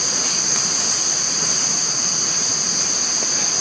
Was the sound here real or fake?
real